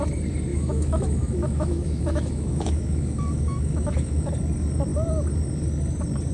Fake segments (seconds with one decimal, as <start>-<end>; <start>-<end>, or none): 0.5-4.3